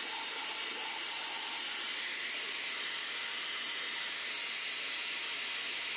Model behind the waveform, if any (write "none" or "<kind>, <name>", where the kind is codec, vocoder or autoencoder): none